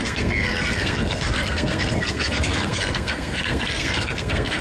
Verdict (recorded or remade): remade